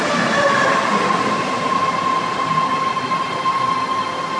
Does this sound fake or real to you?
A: real